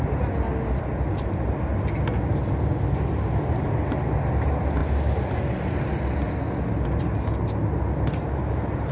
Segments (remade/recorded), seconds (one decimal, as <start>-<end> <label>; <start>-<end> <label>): 0.0-8.9 recorded